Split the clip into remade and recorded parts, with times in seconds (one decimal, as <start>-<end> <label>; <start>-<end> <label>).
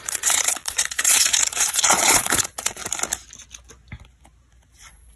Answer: 0.0-2.8 remade; 2.8-4.8 recorded; 4.8-5.2 remade